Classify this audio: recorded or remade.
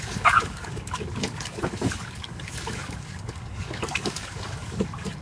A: remade